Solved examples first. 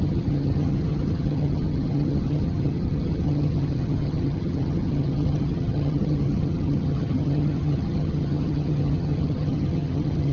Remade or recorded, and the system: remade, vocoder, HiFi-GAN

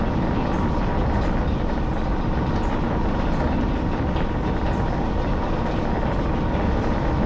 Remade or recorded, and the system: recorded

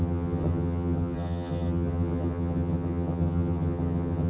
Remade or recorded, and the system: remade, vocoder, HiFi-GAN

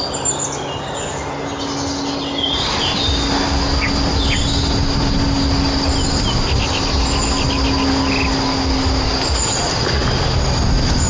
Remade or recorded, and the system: recorded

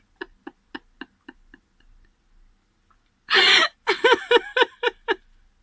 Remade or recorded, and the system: recorded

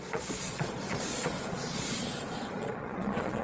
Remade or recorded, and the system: remade, vocoder, Vocos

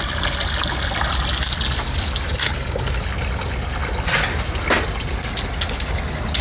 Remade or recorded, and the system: recorded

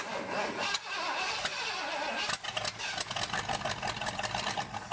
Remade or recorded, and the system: recorded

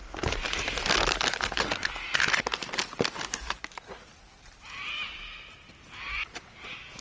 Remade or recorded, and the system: recorded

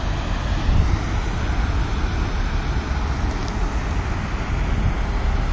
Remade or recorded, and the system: recorded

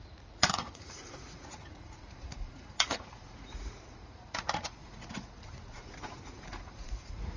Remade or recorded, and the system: remade, vocoder, Vocos